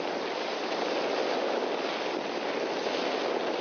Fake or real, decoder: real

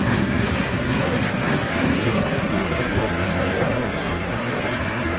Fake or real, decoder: fake, codec, SNAC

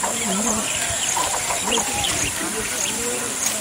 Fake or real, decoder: fake, vocoder, BigVGAN v2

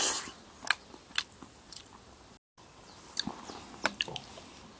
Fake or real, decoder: real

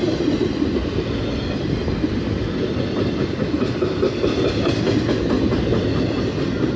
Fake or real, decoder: real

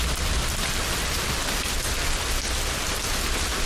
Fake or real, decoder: real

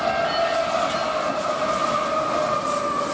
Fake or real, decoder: real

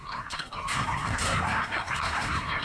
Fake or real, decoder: fake, codec, SNAC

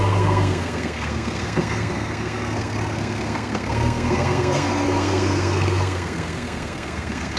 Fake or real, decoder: fake, codec, SNAC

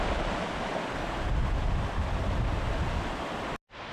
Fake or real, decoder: real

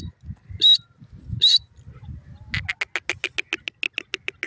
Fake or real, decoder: real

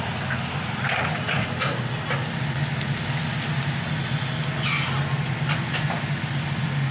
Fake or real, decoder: real